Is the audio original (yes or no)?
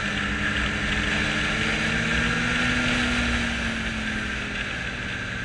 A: yes